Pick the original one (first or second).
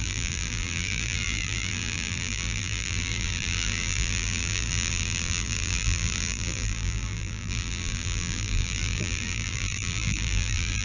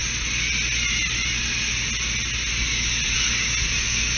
second